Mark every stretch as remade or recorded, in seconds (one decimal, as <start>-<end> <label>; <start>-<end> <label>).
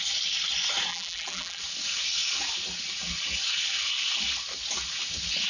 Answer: 0.0-0.9 recorded; 0.9-1.6 remade; 1.6-5.5 recorded